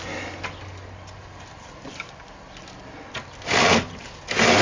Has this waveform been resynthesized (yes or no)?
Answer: no